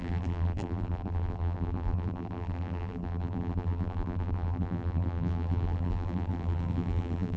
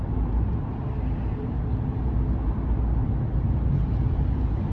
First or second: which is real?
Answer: second